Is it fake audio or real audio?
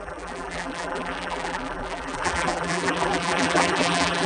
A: fake